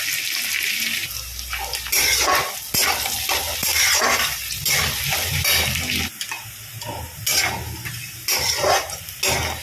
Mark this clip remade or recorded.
recorded